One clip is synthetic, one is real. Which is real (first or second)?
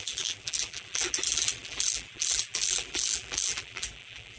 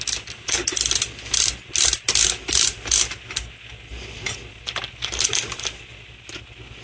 second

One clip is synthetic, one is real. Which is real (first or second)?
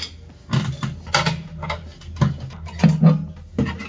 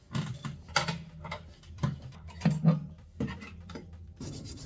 first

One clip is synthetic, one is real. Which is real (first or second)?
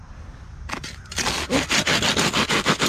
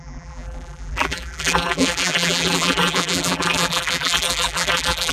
first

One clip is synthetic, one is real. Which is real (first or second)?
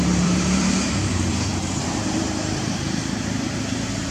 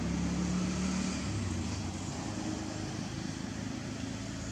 second